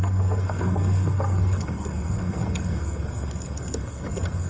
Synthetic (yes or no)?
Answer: yes